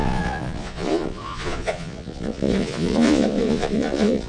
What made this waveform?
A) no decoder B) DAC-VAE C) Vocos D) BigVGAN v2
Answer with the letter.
C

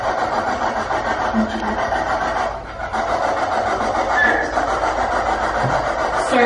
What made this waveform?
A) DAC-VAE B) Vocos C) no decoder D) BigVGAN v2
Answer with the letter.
C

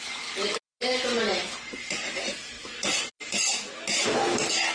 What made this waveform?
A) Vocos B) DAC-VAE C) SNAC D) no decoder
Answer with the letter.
D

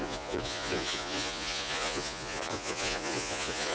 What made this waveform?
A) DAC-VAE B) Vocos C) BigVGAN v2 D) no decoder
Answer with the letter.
B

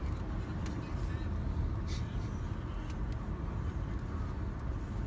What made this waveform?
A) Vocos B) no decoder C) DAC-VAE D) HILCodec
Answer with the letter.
B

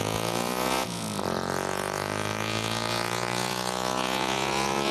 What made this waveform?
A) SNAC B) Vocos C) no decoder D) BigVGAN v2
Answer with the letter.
B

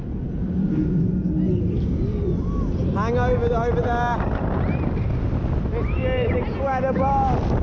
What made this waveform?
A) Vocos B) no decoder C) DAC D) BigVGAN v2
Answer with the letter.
B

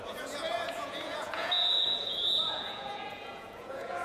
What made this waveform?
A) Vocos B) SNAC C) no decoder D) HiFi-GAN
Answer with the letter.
A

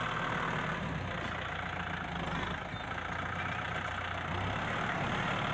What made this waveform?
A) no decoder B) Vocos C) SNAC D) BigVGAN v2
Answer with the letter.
A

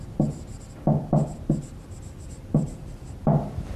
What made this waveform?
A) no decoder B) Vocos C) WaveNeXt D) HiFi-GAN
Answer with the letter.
A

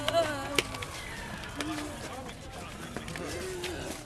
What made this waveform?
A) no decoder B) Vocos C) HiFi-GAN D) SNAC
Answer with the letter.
A